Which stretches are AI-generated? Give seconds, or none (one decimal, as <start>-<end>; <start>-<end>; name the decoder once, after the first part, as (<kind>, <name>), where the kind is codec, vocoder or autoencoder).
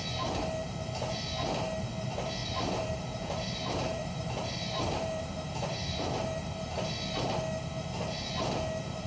2.4-6.7 (vocoder, BigVGAN v2)